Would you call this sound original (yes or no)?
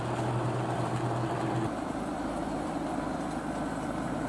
yes